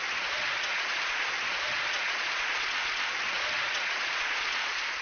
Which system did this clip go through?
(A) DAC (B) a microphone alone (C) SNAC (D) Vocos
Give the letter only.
D